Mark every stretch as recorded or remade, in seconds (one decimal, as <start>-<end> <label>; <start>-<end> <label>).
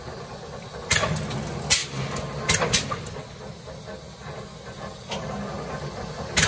0.0-6.5 recorded